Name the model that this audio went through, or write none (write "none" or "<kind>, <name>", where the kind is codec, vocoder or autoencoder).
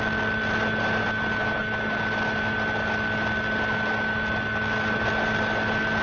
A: none